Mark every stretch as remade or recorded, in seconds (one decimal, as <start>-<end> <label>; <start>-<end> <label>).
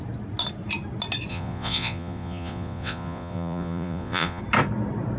0.0-1.3 recorded; 1.3-4.4 remade; 4.4-5.2 recorded